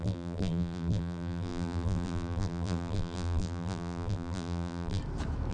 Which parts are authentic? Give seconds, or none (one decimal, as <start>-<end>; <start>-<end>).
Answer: 5.0-5.5